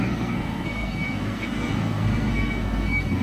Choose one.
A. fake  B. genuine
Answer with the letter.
A